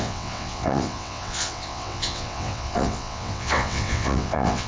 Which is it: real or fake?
fake